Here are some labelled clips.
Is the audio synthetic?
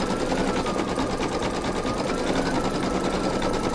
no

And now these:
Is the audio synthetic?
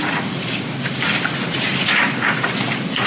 no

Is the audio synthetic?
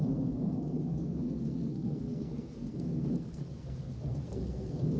yes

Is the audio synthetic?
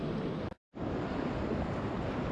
no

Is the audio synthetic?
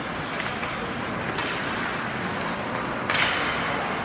no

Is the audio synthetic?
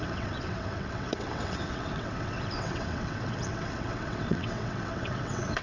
yes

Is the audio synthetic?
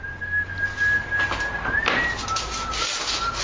no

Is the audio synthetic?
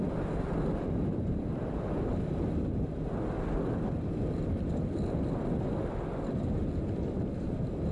no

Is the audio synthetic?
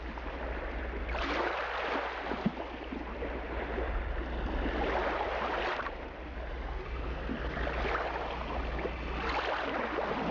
no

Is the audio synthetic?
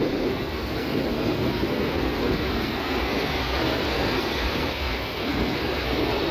yes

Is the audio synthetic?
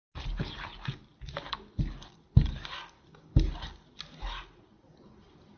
no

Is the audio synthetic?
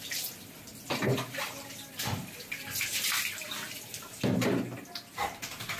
no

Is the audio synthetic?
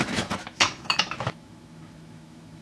yes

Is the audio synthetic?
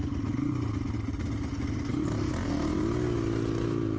no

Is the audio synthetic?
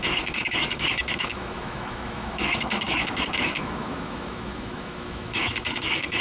yes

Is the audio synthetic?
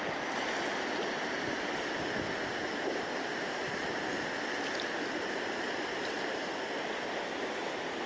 no